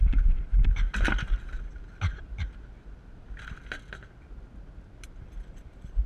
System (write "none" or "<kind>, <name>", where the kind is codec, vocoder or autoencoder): none